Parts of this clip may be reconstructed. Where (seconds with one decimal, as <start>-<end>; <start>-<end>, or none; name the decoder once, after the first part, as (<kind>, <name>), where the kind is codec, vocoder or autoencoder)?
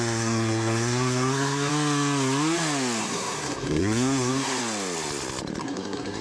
0.0-1.7 (codec, SNAC); 3.0-4.6; 5.6-6.2